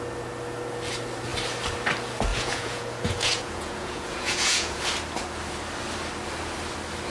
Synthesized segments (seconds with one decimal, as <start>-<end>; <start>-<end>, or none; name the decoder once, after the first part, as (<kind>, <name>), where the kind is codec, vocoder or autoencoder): 2.3-4.8 (vocoder, Vocos)